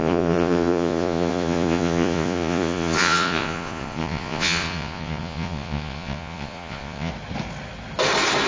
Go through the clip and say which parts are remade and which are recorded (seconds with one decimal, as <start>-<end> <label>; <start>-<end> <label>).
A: 0.0-7.1 remade; 7.1-8.5 recorded